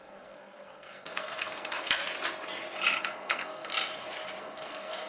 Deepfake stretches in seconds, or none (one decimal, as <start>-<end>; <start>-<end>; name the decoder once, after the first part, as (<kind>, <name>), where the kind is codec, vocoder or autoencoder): 0.0-2.0 (codec, SNAC); 3.0-3.7; 4.4-5.1